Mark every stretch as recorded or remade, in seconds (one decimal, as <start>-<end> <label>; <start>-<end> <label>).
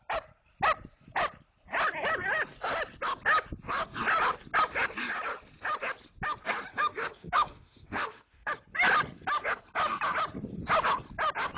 0.0-6.7 recorded; 6.7-8.5 remade; 8.5-11.6 recorded